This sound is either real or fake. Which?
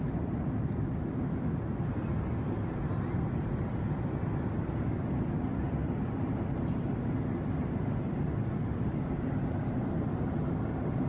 real